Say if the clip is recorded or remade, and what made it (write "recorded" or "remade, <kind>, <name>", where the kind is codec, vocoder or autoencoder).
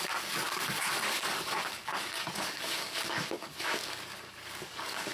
remade, codec, DAC